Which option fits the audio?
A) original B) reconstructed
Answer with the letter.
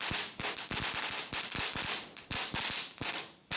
A